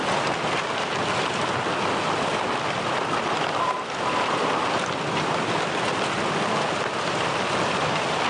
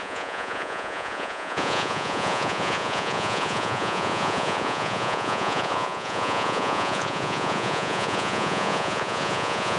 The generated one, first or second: second